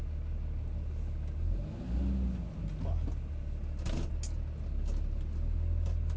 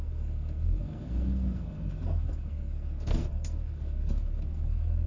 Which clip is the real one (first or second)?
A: first